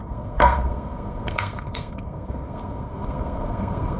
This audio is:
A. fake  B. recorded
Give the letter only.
A